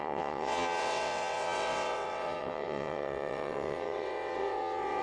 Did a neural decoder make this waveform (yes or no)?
yes